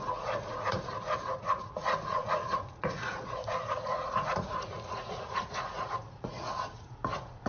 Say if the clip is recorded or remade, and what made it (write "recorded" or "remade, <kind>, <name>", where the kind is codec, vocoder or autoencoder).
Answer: remade, vocoder, Vocos